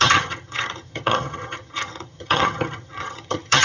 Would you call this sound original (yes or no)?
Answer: no